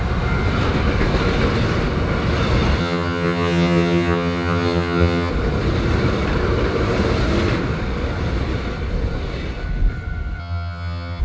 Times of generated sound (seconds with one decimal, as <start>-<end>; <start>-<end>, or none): 2.8-5.3; 10.4-11.2